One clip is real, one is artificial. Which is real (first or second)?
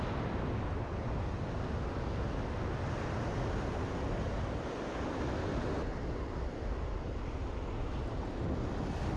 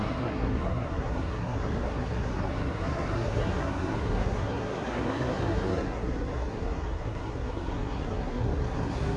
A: first